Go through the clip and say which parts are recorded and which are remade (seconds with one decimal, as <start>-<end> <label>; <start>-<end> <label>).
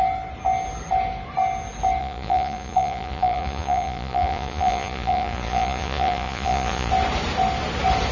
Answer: 0.0-2.0 recorded; 2.0-6.9 remade; 6.9-8.1 recorded